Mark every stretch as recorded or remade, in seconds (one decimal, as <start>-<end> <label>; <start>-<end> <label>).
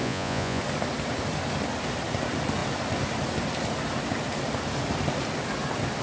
0.0-0.6 remade; 0.6-6.0 recorded